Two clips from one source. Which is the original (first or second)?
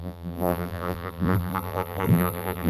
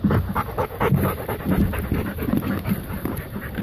second